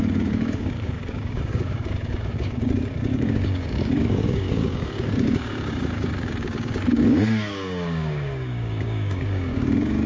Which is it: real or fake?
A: fake